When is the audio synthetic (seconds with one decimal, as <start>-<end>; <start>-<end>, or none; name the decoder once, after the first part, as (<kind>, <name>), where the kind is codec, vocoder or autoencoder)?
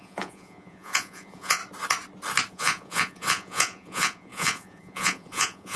0.0-1.6 (vocoder, Vocos); 2.5-5.8